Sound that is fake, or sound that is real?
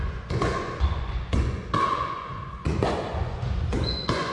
fake